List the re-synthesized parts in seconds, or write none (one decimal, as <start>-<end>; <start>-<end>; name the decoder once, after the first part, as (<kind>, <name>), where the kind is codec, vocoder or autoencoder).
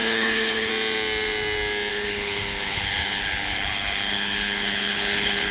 0.0-0.7 (codec, HILCodec); 1.9-5.5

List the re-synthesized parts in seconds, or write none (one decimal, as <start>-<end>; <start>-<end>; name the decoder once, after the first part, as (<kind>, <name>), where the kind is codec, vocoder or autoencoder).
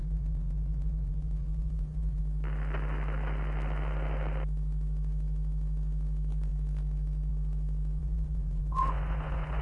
0.0-2.2 (vocoder, Vocos); 8.0-9.6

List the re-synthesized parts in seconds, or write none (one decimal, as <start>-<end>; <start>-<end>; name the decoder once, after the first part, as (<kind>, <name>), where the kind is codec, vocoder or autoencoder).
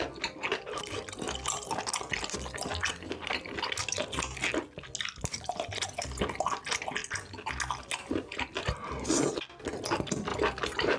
10.3-11.0 (vocoder, BigVGAN v2)